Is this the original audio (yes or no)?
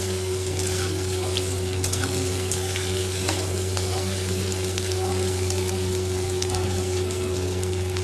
no